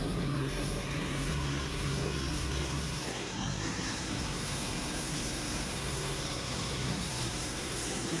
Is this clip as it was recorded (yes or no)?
no